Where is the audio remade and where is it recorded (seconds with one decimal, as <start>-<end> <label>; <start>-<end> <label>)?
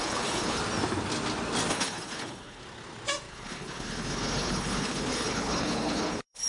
0.0-0.6 remade; 0.6-1.7 recorded; 1.7-2.6 remade; 2.6-3.3 recorded; 3.3-6.5 remade